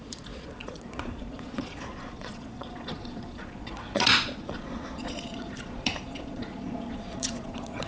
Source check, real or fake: fake